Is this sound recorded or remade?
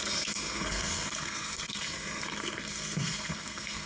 remade